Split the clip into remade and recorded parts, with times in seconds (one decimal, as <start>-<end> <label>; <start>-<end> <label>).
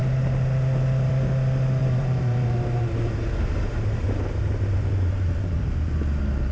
0.0-1.8 recorded; 1.8-5.7 remade; 5.7-6.5 recorded